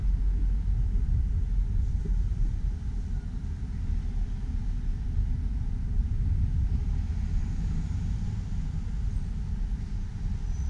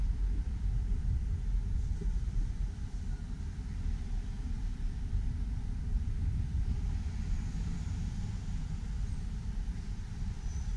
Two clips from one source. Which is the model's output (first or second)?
second